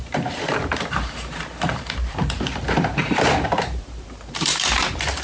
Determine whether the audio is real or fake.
fake